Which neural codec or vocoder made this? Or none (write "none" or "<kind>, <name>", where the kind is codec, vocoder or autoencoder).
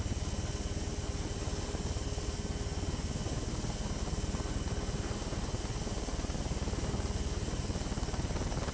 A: none